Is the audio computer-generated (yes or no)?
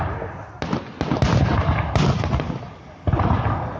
no